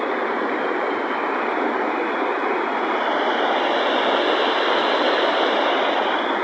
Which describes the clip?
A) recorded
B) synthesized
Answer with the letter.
A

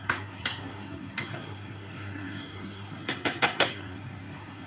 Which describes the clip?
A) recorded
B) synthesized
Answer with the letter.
B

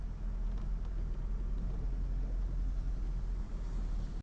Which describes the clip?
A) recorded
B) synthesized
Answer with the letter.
A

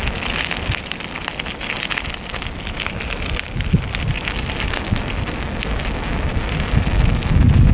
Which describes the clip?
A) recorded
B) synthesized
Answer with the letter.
A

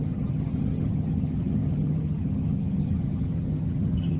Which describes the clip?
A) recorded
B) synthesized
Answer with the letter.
B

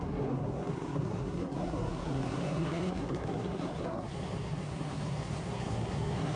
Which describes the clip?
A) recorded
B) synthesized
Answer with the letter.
B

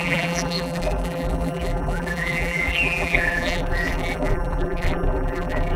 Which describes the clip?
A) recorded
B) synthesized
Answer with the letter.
B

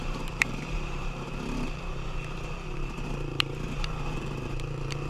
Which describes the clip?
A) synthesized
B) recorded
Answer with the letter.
A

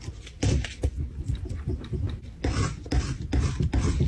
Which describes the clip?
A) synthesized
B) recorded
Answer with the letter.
B